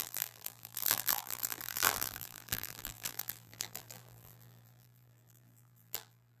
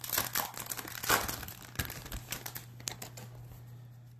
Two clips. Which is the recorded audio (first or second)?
second